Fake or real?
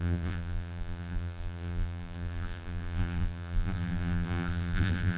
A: fake